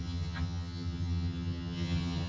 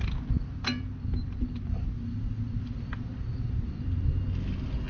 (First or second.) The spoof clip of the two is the first